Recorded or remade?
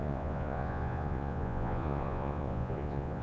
remade